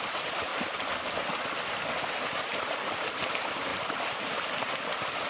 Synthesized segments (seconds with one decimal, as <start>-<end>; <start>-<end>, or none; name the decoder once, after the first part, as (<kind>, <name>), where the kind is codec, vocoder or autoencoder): 0.0-0.5 (vocoder, BigVGAN v2); 2.3-3.7